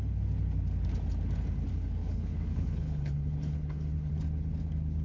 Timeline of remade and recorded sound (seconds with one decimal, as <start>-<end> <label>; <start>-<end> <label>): 0.0-1.7 recorded; 1.7-4.1 remade; 4.1-5.0 recorded

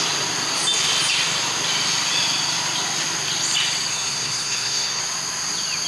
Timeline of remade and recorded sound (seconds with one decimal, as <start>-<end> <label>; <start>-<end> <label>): 0.0-3.9 recorded; 3.9-5.0 remade; 5.0-5.9 recorded